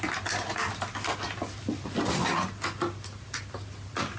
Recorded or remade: recorded